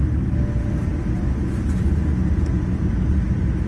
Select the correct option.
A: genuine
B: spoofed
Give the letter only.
A